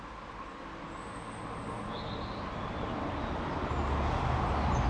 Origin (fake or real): real